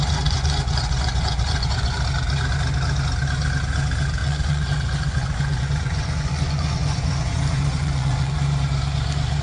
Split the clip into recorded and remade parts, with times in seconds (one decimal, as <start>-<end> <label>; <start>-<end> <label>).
0.0-2.0 remade; 2.0-4.2 recorded; 4.2-8.4 remade; 8.4-9.4 recorded